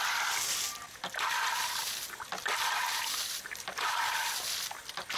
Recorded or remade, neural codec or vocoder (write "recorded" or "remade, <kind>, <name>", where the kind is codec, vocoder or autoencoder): recorded